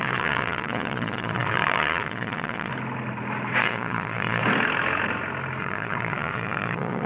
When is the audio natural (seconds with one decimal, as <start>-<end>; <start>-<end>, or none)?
2.7-3.6; 4.4-5.6